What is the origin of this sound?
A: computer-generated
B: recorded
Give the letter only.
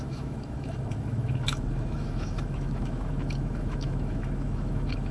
A